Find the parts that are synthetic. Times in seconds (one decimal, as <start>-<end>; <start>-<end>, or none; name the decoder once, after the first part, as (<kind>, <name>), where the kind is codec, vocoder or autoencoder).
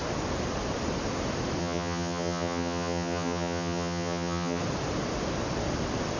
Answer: 1.6-4.6 (vocoder, HiFi-GAN)